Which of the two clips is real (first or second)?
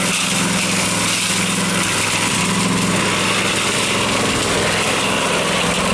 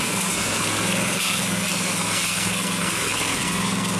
first